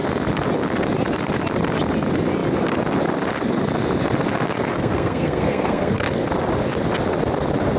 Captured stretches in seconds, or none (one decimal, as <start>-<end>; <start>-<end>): 0.0-4.7; 6.2-7.8